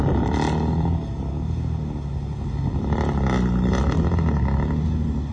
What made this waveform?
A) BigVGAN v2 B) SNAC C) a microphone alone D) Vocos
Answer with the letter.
C